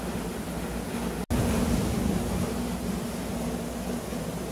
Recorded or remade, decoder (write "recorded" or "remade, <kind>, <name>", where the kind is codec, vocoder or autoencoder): recorded